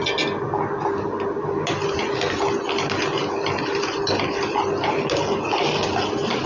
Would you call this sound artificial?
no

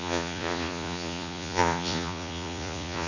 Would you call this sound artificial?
yes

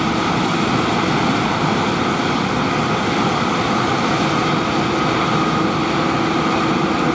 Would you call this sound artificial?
no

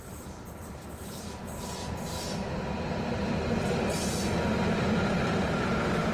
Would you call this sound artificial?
no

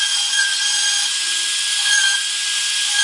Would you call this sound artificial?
yes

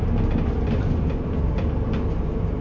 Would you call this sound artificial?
no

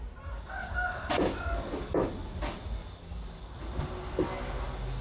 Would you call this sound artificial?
no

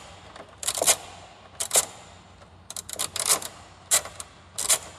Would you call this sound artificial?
no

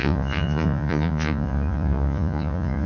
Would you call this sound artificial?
yes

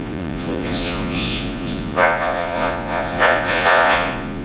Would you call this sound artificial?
yes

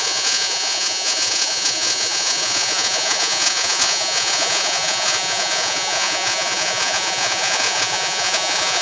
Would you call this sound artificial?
yes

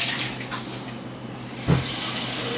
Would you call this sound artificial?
no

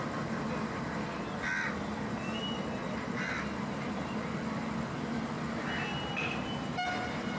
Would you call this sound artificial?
no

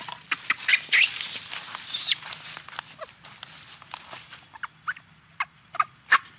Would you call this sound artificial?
no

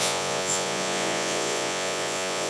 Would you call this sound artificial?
yes